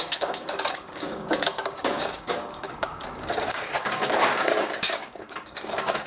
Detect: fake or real fake